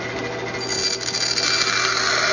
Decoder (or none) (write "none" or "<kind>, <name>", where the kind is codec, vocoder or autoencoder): none